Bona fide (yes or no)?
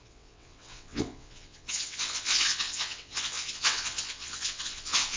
no